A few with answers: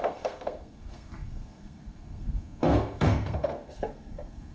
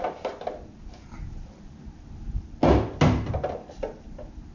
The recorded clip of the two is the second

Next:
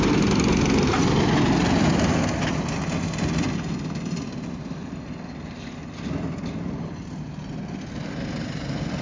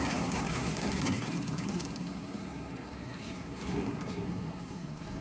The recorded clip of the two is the first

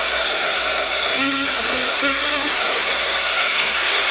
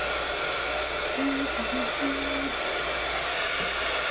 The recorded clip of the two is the second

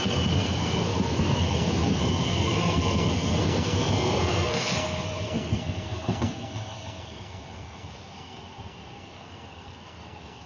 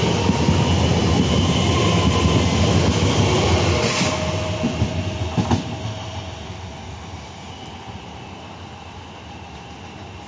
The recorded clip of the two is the second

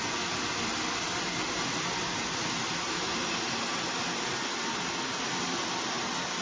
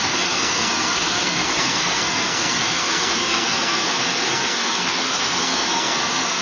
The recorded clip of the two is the first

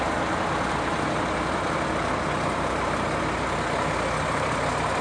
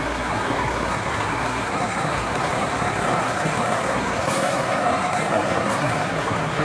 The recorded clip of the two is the first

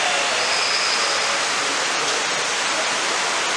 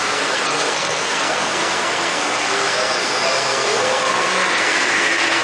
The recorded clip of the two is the first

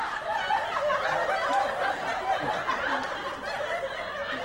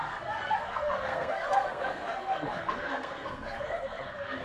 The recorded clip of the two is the first